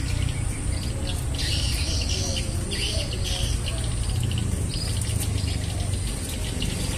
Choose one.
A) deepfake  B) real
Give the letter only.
B